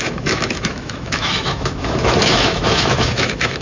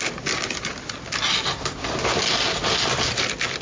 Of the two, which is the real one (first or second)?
second